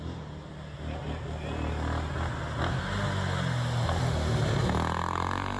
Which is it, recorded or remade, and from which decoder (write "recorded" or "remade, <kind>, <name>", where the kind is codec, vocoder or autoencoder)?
recorded